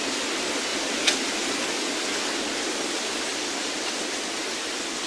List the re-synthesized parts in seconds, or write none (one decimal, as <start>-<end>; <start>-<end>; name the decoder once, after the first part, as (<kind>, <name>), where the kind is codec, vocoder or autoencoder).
none

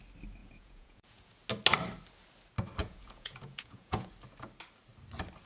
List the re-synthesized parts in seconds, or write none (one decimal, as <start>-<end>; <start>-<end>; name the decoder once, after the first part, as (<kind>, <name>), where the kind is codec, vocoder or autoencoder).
0.4-1.3 (vocoder, Vocos); 2.8-4.1

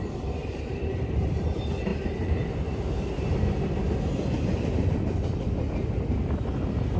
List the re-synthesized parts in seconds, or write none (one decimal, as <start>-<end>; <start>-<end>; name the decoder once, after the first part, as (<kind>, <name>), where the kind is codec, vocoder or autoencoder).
0.4-1.4 (vocoder, BigVGAN v2); 1.9-3.3

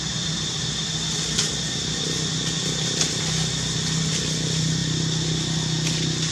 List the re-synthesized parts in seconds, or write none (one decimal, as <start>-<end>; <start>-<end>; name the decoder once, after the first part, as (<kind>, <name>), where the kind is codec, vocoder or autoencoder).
none

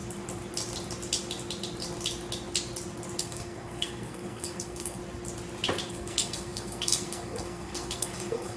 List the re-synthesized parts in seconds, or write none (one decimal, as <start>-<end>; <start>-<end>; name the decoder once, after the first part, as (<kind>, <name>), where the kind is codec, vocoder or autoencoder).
3.2-5.0 (codec, SNAC); 5.9-8.6

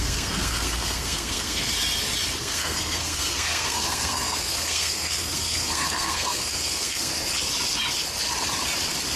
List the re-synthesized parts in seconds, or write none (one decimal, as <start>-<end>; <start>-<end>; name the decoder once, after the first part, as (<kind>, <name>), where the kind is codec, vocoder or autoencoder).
0.0-1.7 (codec, SNAC); 2.4-7.1